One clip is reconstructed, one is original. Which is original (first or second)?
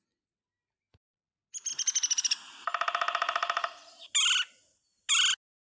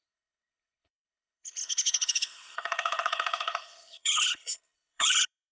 first